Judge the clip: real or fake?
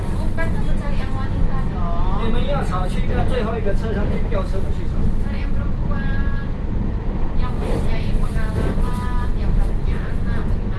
real